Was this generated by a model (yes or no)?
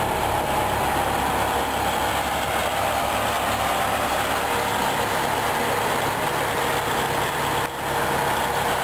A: no